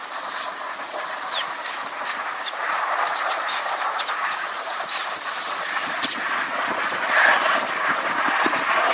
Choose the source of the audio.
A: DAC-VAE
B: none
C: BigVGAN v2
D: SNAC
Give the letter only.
C